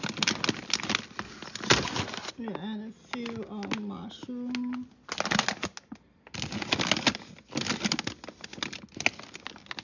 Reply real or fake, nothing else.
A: real